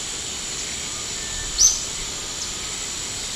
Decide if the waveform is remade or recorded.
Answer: recorded